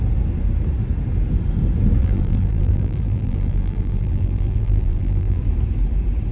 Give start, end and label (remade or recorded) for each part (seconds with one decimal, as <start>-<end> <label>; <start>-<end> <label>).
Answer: 0.0-2.0 recorded; 2.0-5.4 remade; 5.4-6.3 recorded